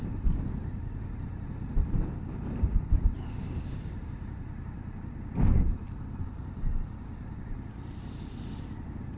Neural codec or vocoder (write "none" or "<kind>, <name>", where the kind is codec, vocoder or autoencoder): none